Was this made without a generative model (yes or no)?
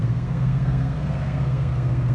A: no